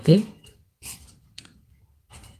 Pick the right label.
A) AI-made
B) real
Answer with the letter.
A